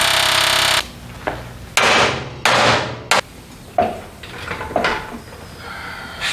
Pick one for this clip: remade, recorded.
recorded